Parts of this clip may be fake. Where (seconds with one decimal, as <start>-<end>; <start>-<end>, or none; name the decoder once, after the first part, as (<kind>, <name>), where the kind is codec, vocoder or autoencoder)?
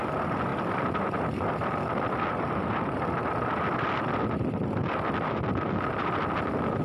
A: 0.5-1.5 (vocoder, BigVGAN v2)